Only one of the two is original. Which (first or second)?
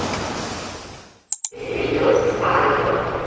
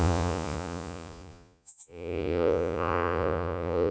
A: first